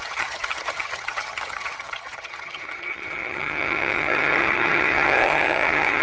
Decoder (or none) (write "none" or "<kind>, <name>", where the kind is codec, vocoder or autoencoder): vocoder, HiFi-GAN